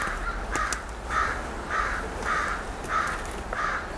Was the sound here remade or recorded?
recorded